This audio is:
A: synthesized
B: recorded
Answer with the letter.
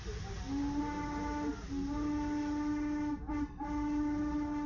B